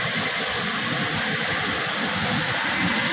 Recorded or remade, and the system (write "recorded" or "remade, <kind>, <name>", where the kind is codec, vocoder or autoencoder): recorded